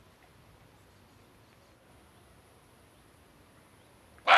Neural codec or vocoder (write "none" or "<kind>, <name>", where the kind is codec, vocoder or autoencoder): none